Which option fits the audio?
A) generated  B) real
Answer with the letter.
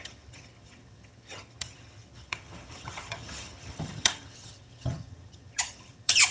A